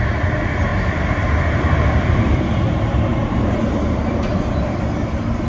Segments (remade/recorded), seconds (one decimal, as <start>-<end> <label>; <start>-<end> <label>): 0.0-5.5 recorded